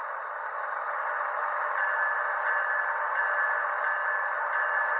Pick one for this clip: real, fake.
real